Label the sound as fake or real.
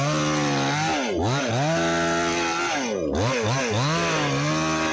real